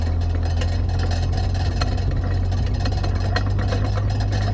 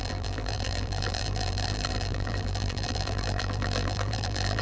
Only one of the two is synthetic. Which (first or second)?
second